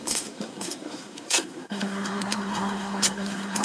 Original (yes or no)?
no